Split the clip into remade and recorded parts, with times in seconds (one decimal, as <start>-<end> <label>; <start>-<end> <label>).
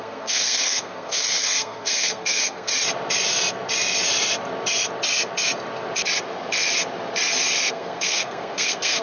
0.0-2.7 remade; 2.7-7.7 recorded; 7.7-9.0 remade